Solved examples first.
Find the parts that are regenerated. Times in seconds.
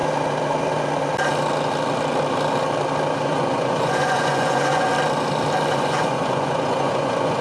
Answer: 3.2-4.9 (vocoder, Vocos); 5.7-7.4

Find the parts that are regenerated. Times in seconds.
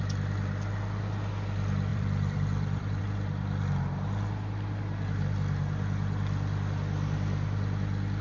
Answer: 1.9-3.0 (vocoder, BigVGAN v2)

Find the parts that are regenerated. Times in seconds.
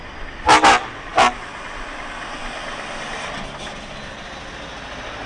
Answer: none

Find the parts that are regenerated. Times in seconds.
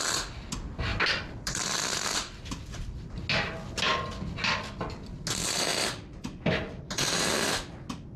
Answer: 0.9-3.2 (vocoder, BigVGAN v2); 5.7-6.8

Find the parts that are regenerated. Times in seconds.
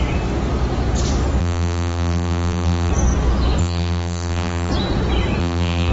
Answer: 1.4-2.9 (vocoder, BigVGAN v2); 3.6-4.7; 5.4-5.9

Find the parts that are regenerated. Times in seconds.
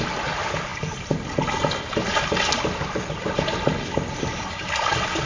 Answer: none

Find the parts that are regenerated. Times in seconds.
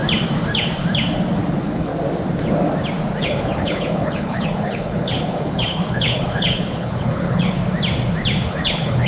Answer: 1.5-1.9 (codec, HILCodec); 3.2-7.6; 8.5-9.1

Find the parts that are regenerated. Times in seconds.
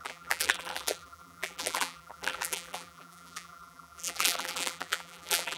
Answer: 0.0-5.6 (vocoder, BigVGAN v2)